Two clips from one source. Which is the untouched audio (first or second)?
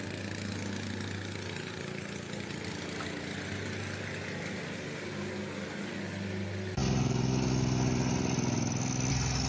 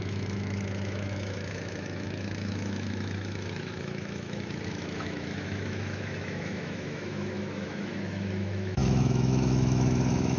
first